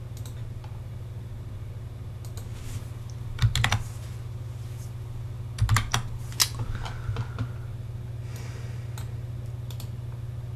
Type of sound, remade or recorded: recorded